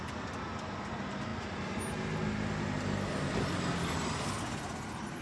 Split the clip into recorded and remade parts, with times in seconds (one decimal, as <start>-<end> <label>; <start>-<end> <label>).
0.0-5.2 recorded